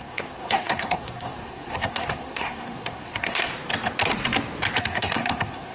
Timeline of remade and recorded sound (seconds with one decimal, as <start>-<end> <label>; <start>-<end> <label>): 0.0-3.5 remade; 3.5-4.8 recorded; 4.8-5.7 remade